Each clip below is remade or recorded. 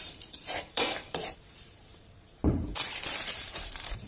remade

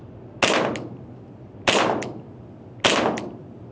recorded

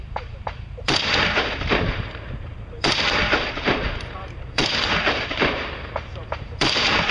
remade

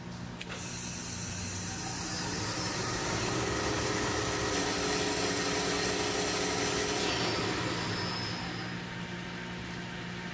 recorded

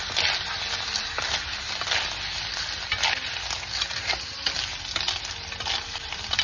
recorded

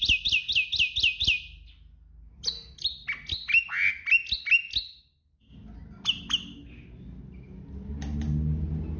recorded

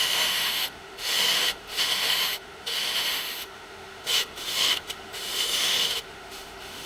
remade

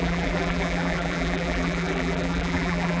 remade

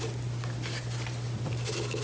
recorded